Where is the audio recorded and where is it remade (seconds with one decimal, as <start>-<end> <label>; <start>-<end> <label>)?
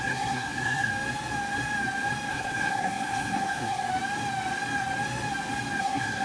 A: 0.0-0.9 remade; 0.9-2.3 recorded; 2.3-3.9 remade; 3.9-5.8 recorded; 5.8-6.2 remade